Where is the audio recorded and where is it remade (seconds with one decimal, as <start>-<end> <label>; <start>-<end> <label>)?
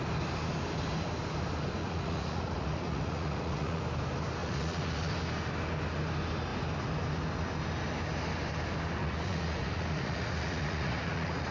0.0-1.8 recorded; 1.8-3.8 remade; 3.8-4.4 recorded; 4.4-5.1 remade; 5.1-9.0 recorded; 9.0-11.5 remade